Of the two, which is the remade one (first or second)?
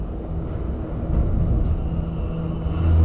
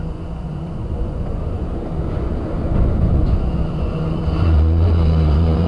second